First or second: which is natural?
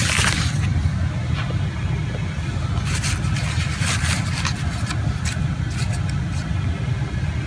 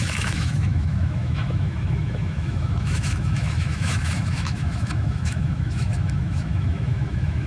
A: first